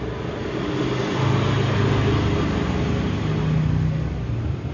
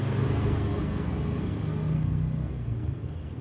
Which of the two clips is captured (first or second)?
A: first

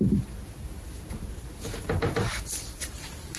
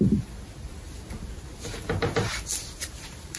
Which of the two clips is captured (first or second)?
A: first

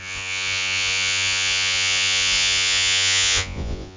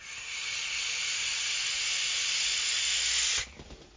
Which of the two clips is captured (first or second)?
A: second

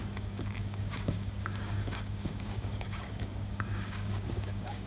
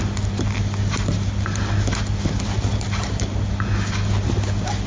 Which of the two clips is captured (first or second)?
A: second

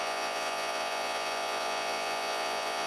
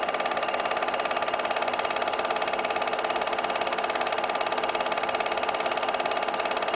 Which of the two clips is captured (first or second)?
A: second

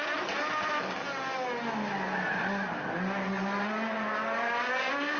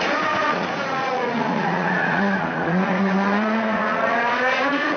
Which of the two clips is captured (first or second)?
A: first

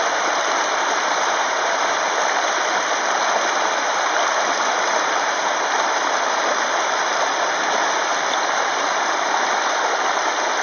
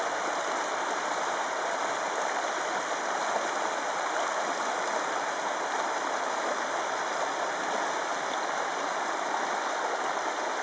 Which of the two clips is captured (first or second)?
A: second